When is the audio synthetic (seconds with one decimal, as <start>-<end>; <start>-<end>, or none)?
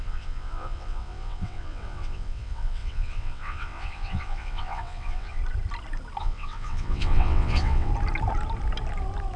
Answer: 0.0-5.4; 6.2-7.9